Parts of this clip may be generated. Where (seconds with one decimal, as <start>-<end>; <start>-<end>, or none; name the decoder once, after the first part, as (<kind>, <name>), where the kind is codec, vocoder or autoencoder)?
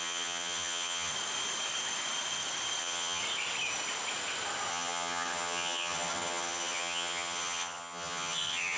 0.0-1.1 (vocoder, HiFi-GAN); 2.8-3.2; 4.7-8.8